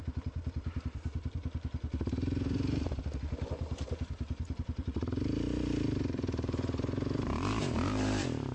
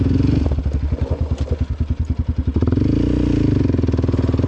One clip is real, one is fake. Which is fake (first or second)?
first